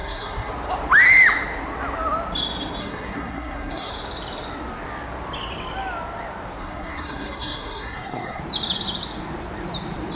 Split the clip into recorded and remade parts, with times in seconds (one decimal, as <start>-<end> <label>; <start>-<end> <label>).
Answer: 0.0-0.5 remade; 0.5-2.8 recorded; 2.8-3.9 remade; 3.9-6.6 recorded; 6.6-8.4 remade; 8.4-10.2 recorded